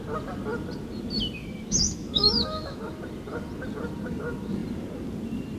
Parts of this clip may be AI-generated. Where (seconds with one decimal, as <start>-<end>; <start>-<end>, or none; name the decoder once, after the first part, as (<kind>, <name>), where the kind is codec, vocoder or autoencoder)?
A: 1.4-2.8 (autoencoder, DAC-VAE)